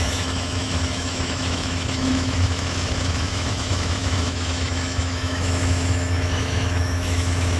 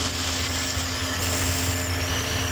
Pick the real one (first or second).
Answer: second